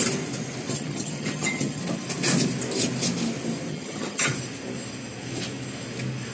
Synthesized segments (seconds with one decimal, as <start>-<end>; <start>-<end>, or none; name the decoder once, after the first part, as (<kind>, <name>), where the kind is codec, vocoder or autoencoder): 0.7-1.8 (vocoder, HiFi-GAN); 3.7-4.3